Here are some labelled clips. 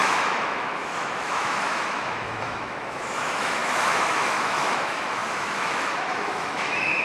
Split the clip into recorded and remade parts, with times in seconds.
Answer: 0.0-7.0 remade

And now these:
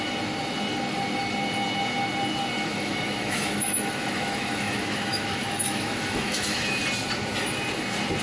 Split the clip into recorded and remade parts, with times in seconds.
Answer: 0.0-2.7 recorded; 2.7-6.8 remade; 6.8-8.2 recorded

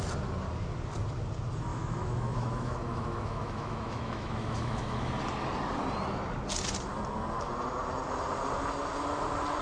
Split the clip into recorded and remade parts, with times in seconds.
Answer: 0.0-1.7 recorded; 1.7-5.1 remade; 5.1-9.6 recorded